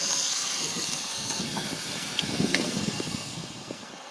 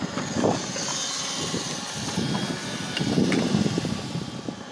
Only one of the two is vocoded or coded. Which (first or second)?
first